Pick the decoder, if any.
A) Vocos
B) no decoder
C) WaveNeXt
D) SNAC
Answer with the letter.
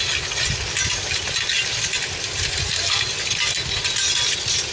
B